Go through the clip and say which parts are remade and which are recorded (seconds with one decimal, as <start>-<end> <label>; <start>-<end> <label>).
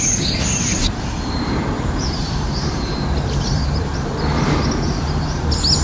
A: 0.0-0.7 recorded; 0.7-4.2 remade; 4.2-5.8 recorded